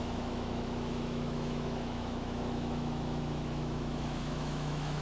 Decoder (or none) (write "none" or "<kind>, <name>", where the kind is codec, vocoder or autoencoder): autoencoder, DAC-VAE